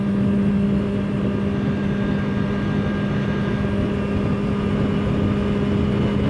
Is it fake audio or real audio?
real